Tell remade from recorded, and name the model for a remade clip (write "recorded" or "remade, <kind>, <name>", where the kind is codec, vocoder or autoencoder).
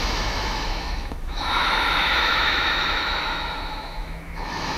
remade, autoencoder, DAC-VAE